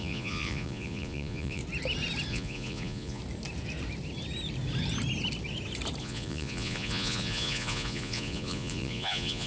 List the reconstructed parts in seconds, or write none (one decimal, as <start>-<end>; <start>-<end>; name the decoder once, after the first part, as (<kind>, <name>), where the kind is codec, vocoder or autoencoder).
0.0-1.6 (vocoder, Vocos); 2.3-3.2; 6.0-9.5